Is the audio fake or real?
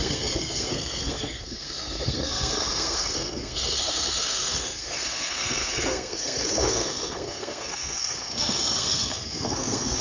fake